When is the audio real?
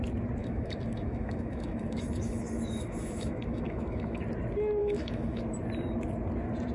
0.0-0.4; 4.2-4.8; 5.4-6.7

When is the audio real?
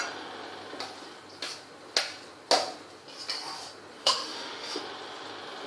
0.0-4.0; 4.8-5.7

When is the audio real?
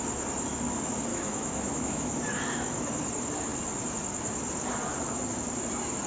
0.0-1.1; 2.2-6.1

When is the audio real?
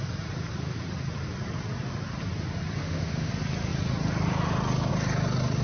0.0-2.8; 3.3-5.6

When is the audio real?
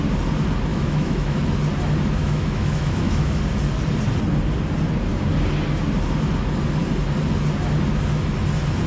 0.0-0.7; 1.4-2.2; 3.4-8.9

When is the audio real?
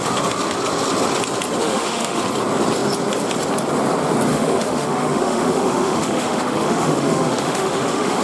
0.0-1.6; 2.2-4.3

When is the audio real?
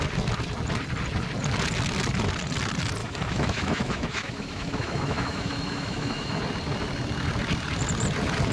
0.0-3.0; 6.4-8.5